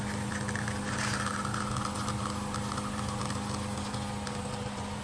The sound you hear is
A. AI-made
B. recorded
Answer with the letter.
B